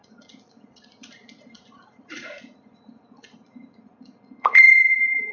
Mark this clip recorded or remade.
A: remade